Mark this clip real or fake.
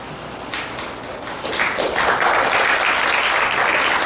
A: real